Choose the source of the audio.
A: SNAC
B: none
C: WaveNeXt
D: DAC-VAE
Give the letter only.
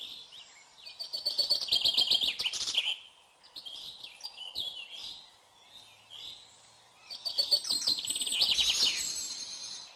B